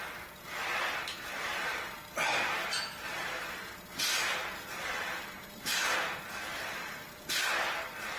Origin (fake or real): real